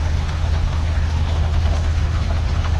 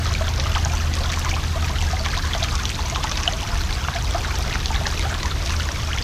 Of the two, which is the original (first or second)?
second